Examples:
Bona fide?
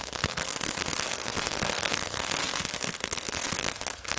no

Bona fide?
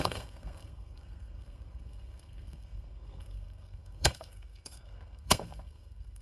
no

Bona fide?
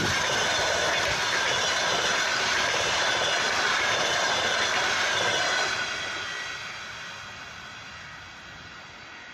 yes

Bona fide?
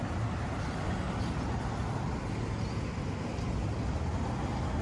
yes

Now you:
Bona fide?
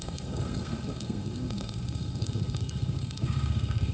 no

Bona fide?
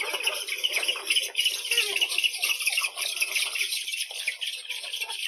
yes